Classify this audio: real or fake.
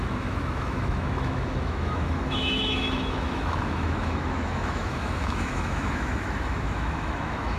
fake